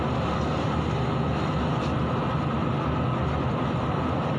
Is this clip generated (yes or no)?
no